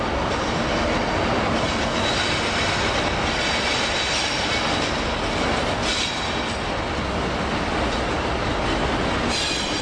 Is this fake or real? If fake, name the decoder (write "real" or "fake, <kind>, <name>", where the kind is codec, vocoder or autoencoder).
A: real